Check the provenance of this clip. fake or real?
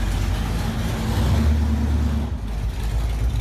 real